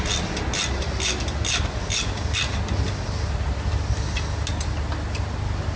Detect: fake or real real